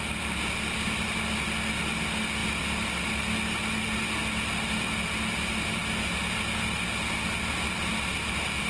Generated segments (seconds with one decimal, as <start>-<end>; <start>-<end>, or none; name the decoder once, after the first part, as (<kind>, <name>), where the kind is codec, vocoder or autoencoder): none